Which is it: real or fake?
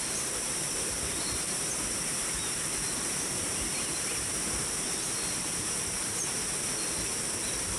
fake